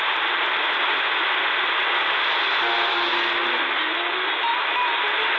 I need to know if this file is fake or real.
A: real